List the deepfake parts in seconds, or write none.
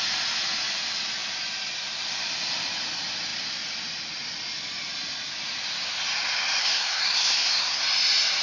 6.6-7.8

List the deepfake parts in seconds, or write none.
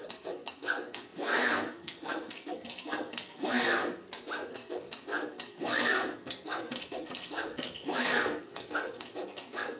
0.0-3.8; 4.5-9.8